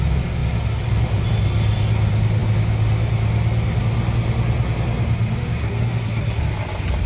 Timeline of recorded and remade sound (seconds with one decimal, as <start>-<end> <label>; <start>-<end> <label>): 0.0-5.6 recorded; 5.6-6.4 remade; 6.4-7.1 recorded